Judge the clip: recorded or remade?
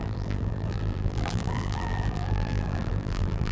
remade